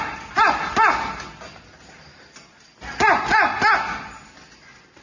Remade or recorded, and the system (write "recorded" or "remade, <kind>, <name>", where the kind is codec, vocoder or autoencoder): recorded